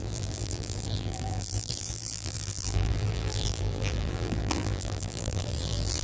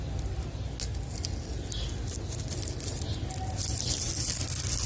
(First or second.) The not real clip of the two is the first